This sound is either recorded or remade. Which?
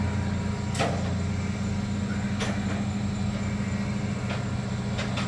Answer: recorded